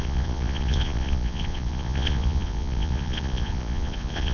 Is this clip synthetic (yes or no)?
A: yes